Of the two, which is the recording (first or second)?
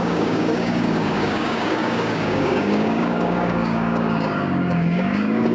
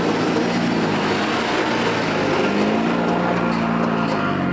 second